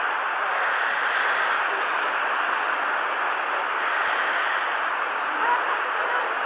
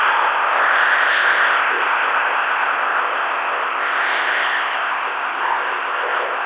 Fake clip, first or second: second